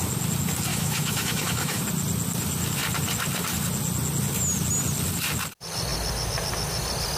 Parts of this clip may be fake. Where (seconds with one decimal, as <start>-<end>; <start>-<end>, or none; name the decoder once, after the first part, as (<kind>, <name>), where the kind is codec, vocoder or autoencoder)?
0.7-1.8 (autoencoder, DAC-VAE)